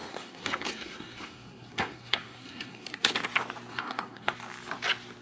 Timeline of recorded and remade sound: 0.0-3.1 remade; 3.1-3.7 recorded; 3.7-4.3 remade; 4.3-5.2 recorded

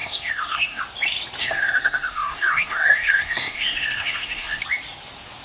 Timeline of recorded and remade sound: 0.0-0.8 remade; 0.8-1.4 recorded; 1.4-4.6 remade; 4.6-5.4 recorded

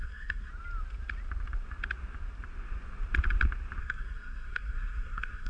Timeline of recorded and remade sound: 0.0-0.5 remade; 0.5-3.8 recorded; 3.8-5.5 remade

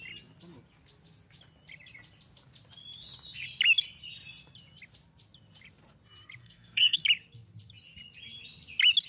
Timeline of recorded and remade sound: 0.0-6.4 recorded; 6.4-7.0 remade; 7.0-9.1 recorded

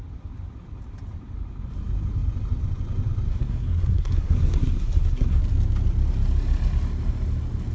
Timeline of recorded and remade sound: 0.0-3.3 recorded; 3.3-5.4 remade; 5.4-7.7 recorded

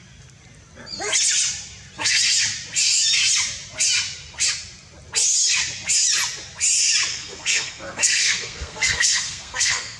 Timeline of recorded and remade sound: 0.0-7.1 recorded; 7.1-10.0 remade